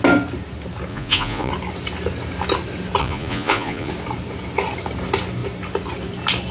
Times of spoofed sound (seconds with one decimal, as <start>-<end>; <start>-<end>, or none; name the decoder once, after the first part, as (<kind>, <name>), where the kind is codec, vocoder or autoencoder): 0.9-1.5 (vocoder, Vocos); 3.0-3.9